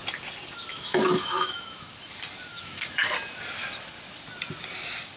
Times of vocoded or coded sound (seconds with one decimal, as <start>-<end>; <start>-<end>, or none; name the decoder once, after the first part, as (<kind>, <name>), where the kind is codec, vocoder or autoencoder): 0.7-1.9 (autoencoder, DAC-VAE); 2.5-3.1